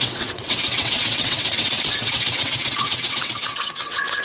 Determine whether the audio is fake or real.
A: fake